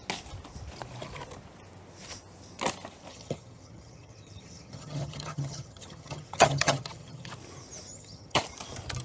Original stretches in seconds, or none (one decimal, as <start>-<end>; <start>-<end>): 0.0-3.1; 7.3-7.9; 8.4-9.0